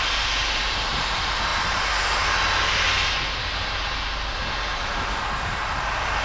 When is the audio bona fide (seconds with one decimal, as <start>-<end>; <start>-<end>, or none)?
0.0-6.2